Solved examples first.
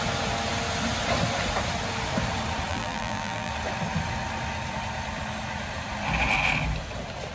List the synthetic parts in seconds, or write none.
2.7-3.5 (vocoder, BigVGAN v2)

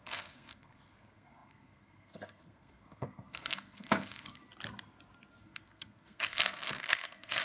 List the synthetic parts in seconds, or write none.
0.0-4.4 (codec, SNAC); 5.4-7.4